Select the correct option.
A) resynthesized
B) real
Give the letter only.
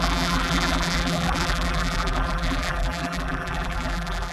A